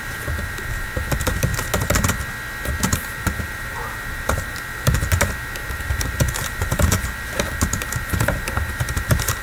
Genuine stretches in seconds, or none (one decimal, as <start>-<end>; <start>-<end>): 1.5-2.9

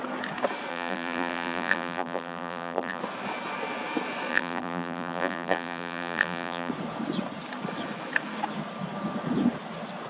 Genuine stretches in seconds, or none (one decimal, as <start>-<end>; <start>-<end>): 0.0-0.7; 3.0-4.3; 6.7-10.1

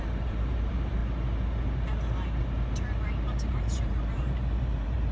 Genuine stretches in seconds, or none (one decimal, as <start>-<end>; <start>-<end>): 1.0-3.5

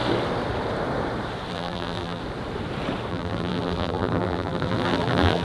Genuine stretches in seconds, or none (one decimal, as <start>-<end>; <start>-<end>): 0.0-1.5; 2.2-3.1